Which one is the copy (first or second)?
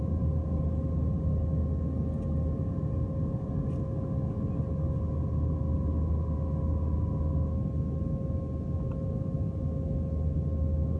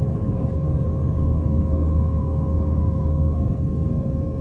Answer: second